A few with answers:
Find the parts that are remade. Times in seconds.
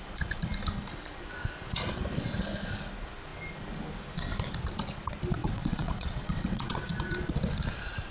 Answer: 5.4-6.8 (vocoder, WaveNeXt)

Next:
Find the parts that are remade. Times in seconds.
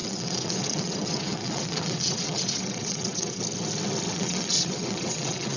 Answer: 0.0-3.4 (vocoder, WaveNeXt); 4.1-5.6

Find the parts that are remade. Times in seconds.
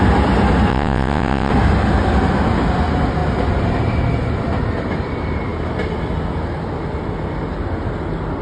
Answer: 0.7-1.5 (vocoder, WaveNeXt)